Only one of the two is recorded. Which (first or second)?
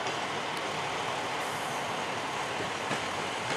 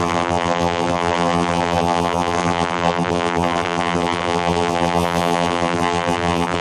first